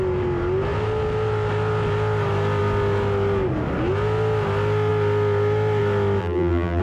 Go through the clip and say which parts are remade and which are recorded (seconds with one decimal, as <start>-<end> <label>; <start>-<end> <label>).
0.0-6.2 recorded; 6.2-6.8 remade